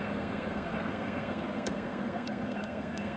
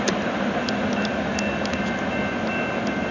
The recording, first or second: second